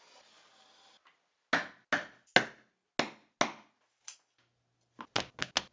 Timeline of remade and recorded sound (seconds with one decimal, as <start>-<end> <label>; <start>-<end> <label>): 0.0-5.7 recorded